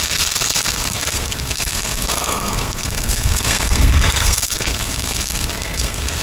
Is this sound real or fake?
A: fake